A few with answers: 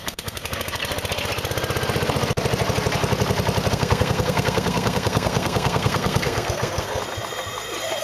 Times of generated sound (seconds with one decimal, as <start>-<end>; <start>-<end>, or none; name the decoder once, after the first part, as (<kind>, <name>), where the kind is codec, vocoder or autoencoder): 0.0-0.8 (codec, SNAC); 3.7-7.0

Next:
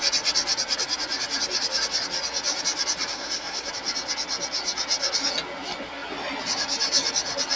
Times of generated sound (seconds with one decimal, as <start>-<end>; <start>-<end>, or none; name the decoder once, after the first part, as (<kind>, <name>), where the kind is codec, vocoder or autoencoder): 3.1-3.7 (codec, SNAC)

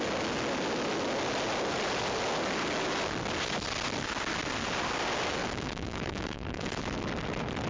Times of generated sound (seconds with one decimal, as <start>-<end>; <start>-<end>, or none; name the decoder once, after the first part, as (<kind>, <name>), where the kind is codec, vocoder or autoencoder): 5.4-6.8 (autoencoder, DAC-VAE)

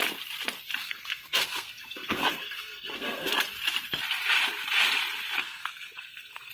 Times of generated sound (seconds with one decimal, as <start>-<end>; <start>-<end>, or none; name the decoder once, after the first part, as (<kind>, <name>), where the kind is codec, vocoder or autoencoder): 0.8-3.3 (codec, SNAC); 5.4-6.5

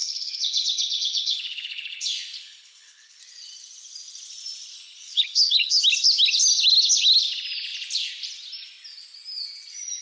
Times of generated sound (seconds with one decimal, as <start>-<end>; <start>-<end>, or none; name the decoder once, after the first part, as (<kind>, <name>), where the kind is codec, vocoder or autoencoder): 0.0-3.2 (codec, HILCodec); 4.7-5.8

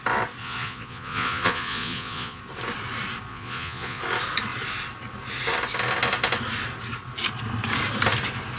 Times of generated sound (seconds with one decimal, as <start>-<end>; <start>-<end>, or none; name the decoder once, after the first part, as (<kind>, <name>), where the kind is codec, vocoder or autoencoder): 0.4-2.4 (vocoder, Vocos); 3.3-4.0

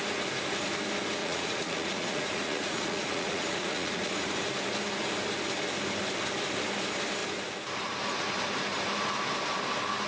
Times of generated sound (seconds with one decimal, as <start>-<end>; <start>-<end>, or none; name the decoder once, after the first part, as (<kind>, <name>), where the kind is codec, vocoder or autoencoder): 1.2-4.3 (vocoder, Vocos)